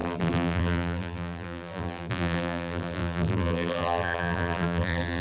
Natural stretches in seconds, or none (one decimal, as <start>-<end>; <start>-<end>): none